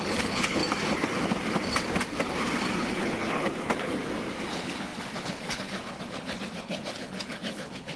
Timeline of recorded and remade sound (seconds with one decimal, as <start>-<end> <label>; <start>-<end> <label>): 0.0-0.6 remade; 0.6-2.8 recorded; 2.8-4.0 remade; 4.0-4.5 recorded; 4.5-8.0 remade